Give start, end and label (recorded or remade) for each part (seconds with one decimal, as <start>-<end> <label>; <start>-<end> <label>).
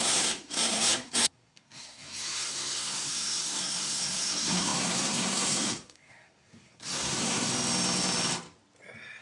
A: 0.0-7.5 remade; 7.5-9.2 recorded